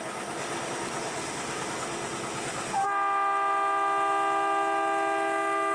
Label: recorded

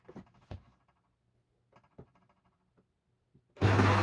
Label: recorded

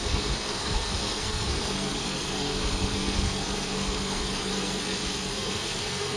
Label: remade